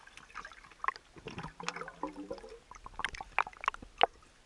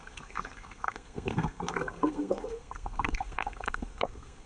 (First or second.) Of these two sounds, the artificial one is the second